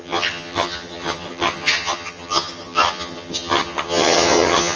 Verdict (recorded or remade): remade